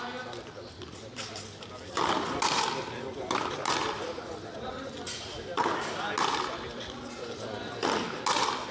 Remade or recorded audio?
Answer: recorded